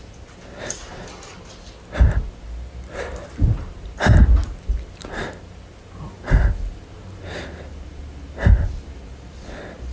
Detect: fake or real real